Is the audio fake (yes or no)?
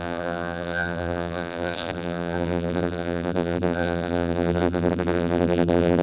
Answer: yes